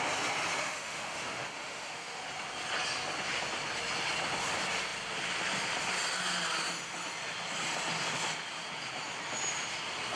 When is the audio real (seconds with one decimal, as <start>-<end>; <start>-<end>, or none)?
0.0-0.6; 2.2-10.2